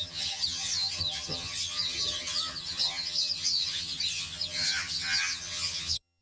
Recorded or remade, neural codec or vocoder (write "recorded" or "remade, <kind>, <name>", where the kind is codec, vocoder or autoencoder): remade, vocoder, HiFi-GAN